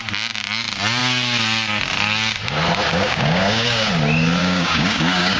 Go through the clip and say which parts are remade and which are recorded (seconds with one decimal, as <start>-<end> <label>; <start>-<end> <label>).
0.0-2.9 recorded; 2.9-3.9 remade; 3.9-4.4 recorded; 4.4-5.4 remade